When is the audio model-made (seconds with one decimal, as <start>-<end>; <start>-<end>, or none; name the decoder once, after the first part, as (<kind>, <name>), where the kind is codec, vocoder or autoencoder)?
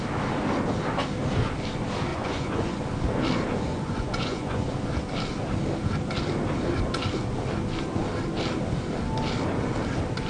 2.1-2.8 (vocoder, Vocos); 3.7-4.7